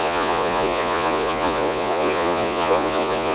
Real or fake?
fake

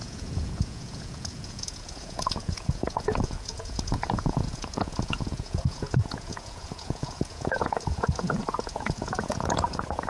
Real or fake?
fake